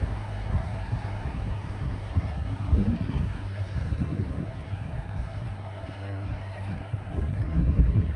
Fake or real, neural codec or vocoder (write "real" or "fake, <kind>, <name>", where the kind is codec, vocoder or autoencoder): fake, codec, SNAC